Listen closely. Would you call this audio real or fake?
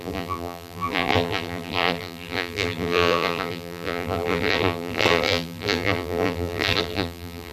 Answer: fake